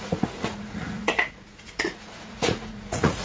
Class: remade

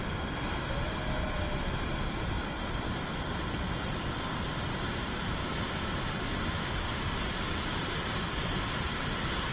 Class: recorded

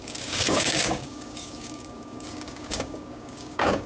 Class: remade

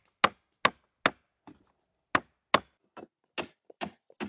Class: recorded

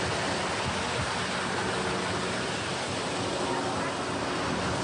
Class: recorded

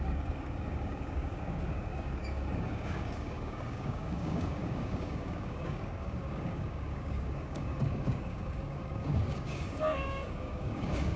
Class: remade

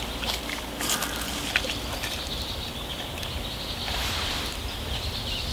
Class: recorded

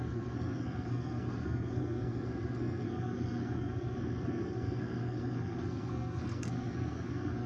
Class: remade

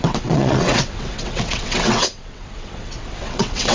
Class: remade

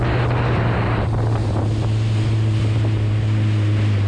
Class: recorded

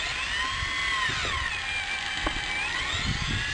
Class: recorded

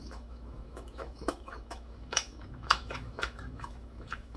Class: remade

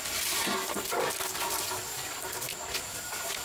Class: recorded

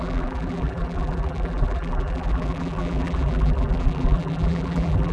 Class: remade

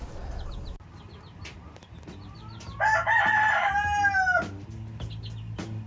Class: recorded